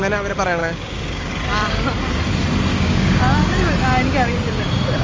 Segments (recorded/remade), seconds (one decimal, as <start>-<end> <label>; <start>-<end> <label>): 0.0-0.6 recorded; 0.6-1.3 remade; 1.3-2.7 recorded; 2.7-3.2 remade; 3.2-5.0 recorded